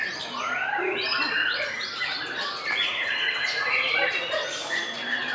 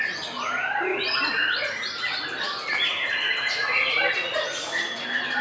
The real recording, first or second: second